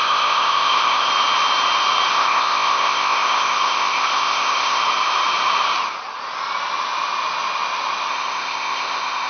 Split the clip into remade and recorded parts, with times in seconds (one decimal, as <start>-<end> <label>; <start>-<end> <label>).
0.0-1.1 remade; 1.1-2.1 recorded; 2.1-4.8 remade; 4.8-8.1 recorded; 8.1-9.3 remade

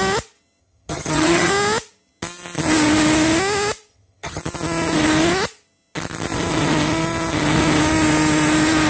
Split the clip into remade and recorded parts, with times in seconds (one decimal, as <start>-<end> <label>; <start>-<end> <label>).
0.0-0.6 recorded; 0.6-1.5 remade; 1.5-3.9 recorded; 3.9-4.4 remade; 4.4-8.9 recorded

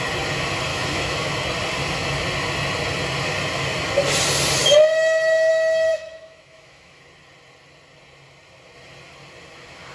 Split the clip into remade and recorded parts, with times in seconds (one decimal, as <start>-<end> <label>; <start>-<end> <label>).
0.0-0.7 recorded; 0.7-1.3 remade; 1.3-5.9 recorded; 5.9-7.0 remade; 7.0-9.9 recorded

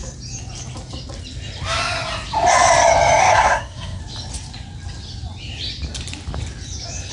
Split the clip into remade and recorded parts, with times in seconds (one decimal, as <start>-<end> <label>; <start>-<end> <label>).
0.0-3.2 recorded; 3.2-4.0 remade; 4.0-7.1 recorded